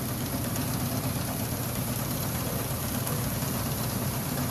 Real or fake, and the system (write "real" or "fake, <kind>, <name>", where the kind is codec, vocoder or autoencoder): fake, vocoder, BigVGAN v2